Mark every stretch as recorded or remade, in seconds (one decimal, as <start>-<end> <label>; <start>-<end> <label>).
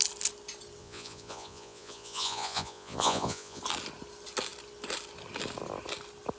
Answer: 0.0-0.8 recorded; 0.8-3.6 remade; 3.6-6.4 recorded